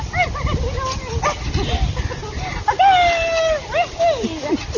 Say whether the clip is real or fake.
real